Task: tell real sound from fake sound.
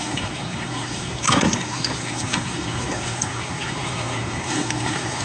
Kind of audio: fake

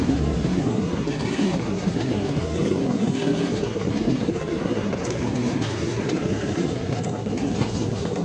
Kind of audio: fake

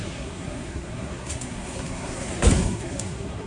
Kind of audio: fake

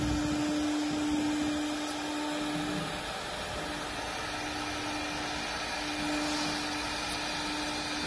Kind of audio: real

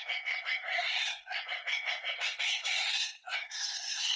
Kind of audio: fake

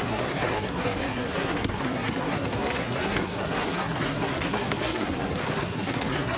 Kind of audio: fake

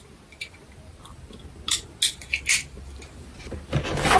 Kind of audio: real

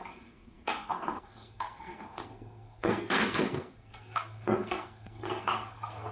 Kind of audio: fake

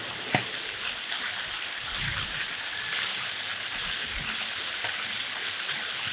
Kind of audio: real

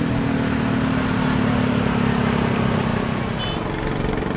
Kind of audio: real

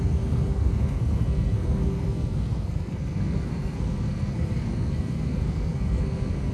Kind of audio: fake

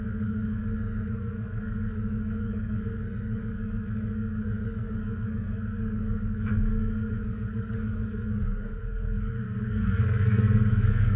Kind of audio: fake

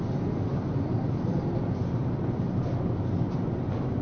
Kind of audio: real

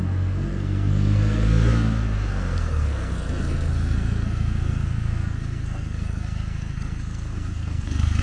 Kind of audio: fake